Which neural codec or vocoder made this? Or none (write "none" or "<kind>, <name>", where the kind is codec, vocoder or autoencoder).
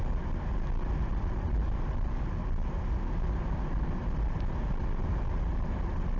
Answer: none